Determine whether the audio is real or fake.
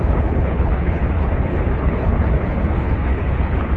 fake